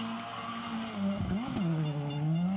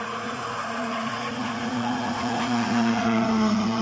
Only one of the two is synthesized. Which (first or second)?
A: second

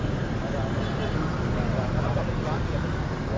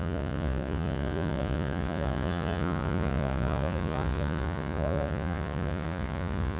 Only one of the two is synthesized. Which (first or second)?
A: second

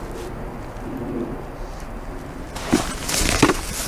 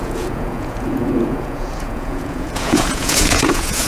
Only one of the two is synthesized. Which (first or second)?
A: second